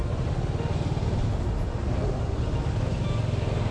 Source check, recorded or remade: recorded